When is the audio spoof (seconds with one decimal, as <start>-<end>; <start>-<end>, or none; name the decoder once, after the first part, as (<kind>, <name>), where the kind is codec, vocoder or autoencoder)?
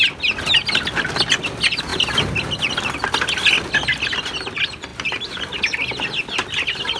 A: 4.9-5.6 (vocoder, BigVGAN v2)